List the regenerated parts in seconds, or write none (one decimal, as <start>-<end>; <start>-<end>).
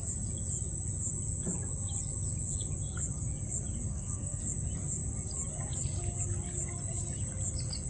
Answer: 3.9-4.4